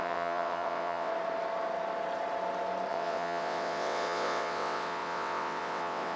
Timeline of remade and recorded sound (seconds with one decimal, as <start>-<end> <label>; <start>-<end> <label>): 0.0-1.1 remade; 1.1-2.9 recorded; 2.9-6.2 remade